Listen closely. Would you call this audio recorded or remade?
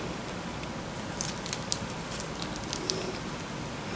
recorded